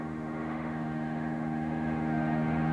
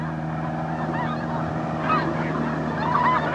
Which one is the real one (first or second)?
second